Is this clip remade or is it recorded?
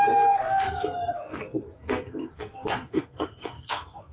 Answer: remade